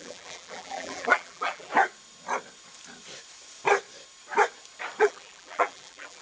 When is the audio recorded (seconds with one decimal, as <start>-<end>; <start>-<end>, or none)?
1.7-5.0